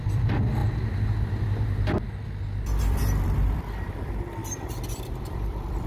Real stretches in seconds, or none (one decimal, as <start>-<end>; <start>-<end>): 0.6-2.8; 4.4-5.2